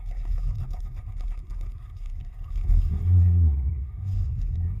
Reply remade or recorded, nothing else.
remade